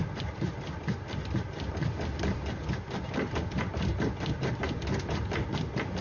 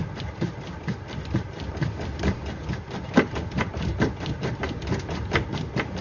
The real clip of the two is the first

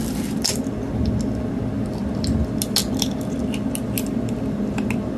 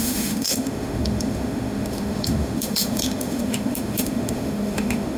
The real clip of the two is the first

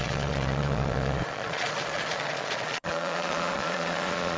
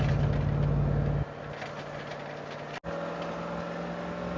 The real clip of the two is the second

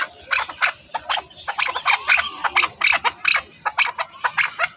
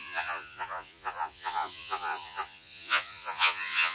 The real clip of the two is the first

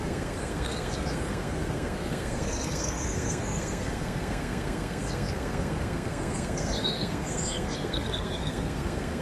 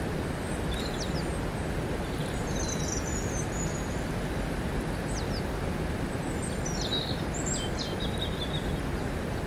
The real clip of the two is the second